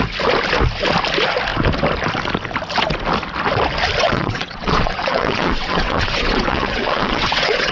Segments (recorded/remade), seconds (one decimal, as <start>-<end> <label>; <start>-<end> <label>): 0.0-4.0 recorded; 4.0-7.7 remade